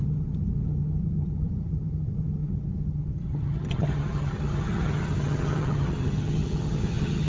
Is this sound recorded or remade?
remade